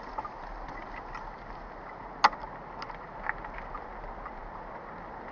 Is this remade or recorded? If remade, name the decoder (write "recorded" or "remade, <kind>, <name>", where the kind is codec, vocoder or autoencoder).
recorded